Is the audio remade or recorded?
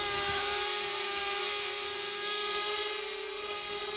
remade